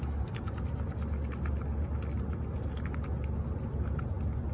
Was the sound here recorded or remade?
recorded